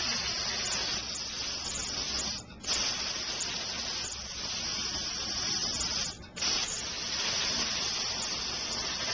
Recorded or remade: recorded